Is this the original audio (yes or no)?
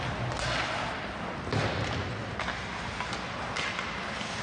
yes